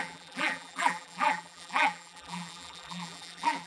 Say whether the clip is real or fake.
fake